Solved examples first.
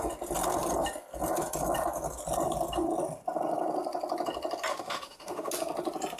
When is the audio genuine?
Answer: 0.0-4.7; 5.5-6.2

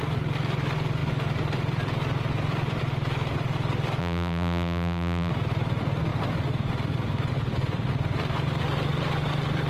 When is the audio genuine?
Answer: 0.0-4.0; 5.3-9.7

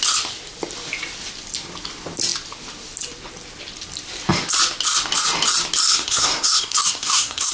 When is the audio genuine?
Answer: 0.0-5.9